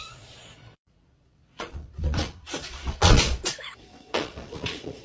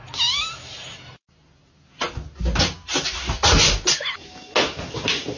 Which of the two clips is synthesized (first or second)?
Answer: first